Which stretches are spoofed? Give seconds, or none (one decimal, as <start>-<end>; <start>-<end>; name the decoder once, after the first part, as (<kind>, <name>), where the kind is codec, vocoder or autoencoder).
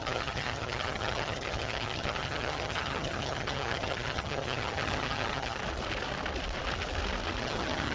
0.0-5.6 (vocoder, HiFi-GAN); 7.4-7.9